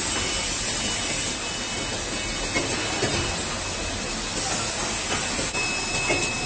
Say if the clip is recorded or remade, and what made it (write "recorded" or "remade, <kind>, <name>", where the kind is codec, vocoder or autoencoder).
recorded